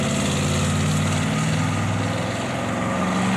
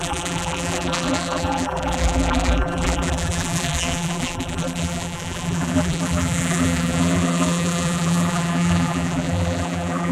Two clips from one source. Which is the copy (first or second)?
second